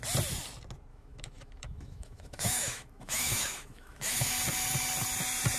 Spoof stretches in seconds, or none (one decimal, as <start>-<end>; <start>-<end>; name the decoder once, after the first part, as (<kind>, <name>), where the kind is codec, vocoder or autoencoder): 0.9-4.3 (autoencoder, DAC-VAE)